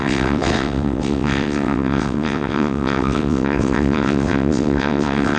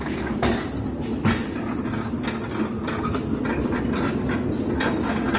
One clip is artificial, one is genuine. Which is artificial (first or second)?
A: first